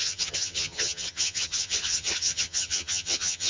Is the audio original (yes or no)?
no